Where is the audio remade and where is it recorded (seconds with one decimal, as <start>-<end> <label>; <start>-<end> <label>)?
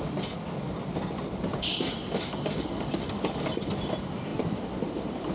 0.0-5.3 recorded